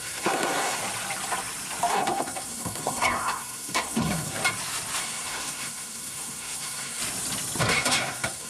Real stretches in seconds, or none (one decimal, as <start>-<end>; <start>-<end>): 0.8-1.9; 4.4-5.0; 7.0-7.6